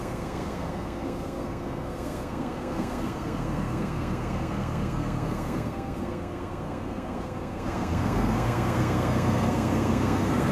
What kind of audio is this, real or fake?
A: fake